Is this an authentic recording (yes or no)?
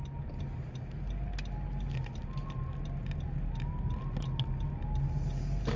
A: yes